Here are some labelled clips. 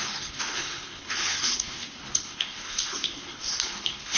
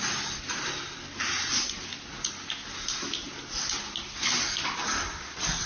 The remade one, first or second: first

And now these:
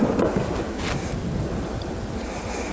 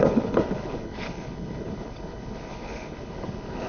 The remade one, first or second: second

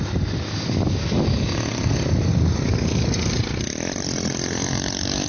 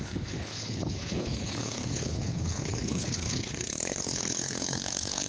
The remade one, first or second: second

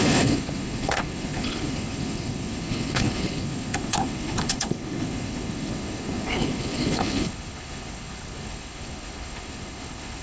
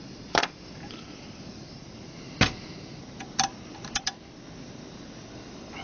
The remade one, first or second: first